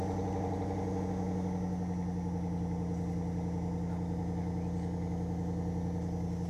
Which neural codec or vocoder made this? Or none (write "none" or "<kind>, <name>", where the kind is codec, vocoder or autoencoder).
none